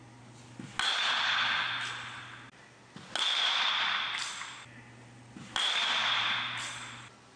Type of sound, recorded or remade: recorded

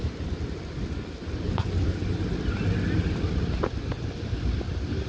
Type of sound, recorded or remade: recorded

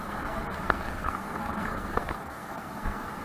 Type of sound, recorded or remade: remade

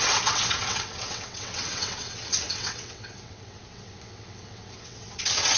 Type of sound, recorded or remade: remade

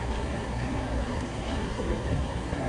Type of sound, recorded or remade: remade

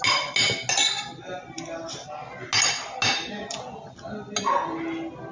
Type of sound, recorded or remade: recorded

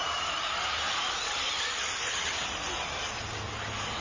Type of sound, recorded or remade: recorded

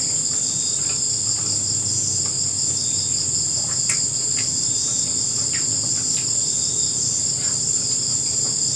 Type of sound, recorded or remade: recorded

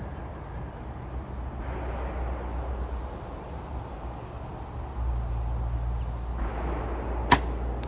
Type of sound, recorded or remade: recorded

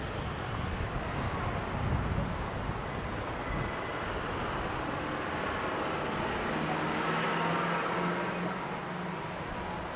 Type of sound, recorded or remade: recorded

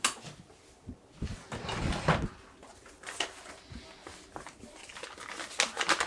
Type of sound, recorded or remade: recorded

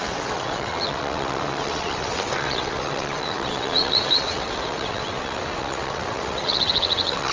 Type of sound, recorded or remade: remade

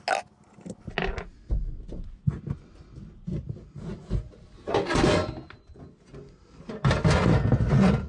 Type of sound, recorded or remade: recorded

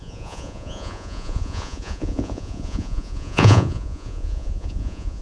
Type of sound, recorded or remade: remade